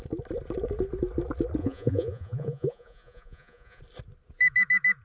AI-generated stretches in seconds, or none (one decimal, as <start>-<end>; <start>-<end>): 1.6-3.8